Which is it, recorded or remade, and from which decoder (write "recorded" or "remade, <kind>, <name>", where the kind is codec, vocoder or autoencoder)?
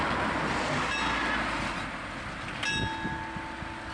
recorded